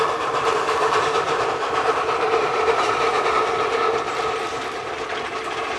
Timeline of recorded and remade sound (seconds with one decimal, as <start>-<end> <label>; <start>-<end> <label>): 0.0-3.1 remade; 3.1-5.2 recorded; 5.2-5.8 remade